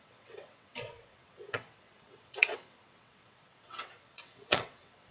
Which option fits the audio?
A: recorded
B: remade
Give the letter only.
B